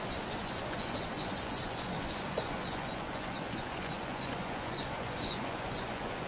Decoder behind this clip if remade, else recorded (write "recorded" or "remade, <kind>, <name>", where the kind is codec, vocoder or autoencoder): remade, vocoder, Vocos